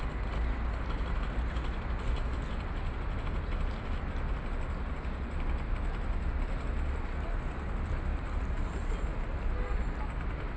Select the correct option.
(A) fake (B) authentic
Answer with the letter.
B